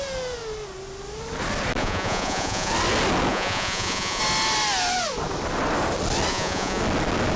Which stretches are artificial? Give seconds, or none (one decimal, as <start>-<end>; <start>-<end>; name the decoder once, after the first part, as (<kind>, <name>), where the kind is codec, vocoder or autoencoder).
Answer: 1.8-2.7 (vocoder, Vocos); 3.3-4.2; 6.3-6.8